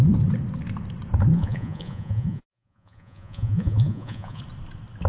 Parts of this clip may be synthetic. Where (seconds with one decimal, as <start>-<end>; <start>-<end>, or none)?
1.3-4.4